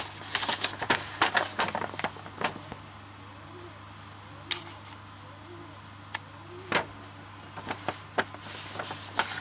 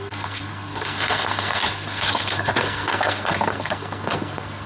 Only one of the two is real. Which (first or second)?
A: first